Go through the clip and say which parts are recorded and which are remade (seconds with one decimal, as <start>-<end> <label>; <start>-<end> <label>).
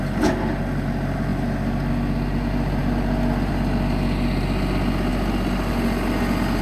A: 0.0-5.1 recorded; 5.1-5.7 remade; 5.7-6.6 recorded